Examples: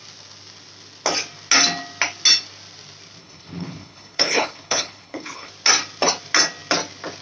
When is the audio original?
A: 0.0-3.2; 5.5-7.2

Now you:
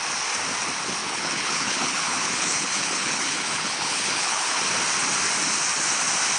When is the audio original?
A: 0.0-1.0; 4.6-6.4

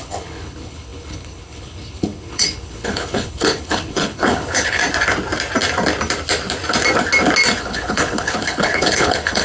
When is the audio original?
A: 4.8-7.6

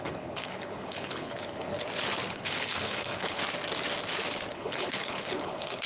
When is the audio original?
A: 1.7-2.3; 3.4-4.5

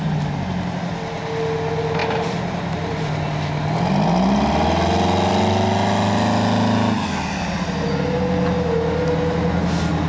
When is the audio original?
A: 0.0-10.1

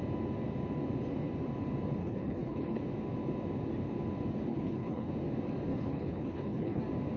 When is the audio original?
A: 0.0-2.0; 2.8-4.5; 5.1-5.7; 6.8-7.2